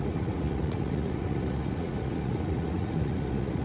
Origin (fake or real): fake